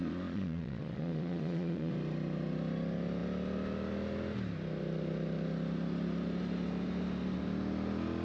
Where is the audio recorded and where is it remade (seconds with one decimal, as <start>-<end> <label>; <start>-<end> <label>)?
0.0-1.9 remade; 1.9-8.2 recorded